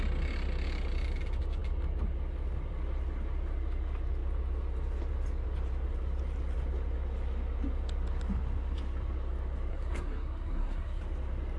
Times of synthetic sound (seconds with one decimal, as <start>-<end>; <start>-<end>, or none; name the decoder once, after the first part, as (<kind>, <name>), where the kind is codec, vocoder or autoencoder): 9.7-11.0 (codec, SNAC)